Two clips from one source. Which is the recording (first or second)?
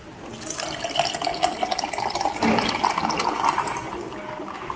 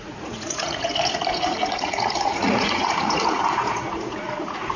first